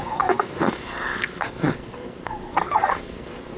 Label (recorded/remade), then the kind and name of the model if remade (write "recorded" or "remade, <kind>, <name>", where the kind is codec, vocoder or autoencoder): remade, codec, SNAC